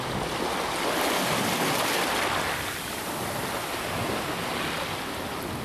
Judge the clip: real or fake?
real